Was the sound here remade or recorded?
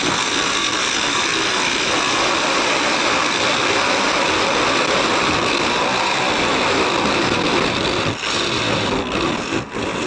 recorded